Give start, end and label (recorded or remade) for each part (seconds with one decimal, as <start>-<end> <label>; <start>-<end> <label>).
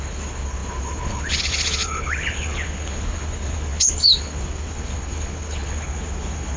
0.0-6.6 remade